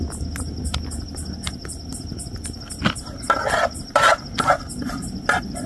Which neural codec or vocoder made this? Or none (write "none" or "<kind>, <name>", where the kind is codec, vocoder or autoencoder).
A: none